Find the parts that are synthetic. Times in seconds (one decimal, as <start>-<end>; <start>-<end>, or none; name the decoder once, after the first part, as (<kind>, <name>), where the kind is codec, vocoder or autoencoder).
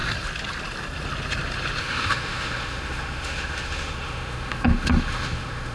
1.8-5.7 (autoencoder, DAC-VAE)